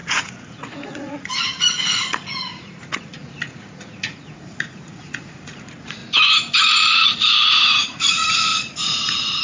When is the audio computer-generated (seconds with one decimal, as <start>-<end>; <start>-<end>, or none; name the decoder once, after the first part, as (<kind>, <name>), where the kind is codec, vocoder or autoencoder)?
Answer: 0.0-6.0 (vocoder, Vocos); 6.6-9.4